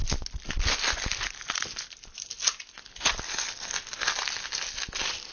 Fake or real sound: real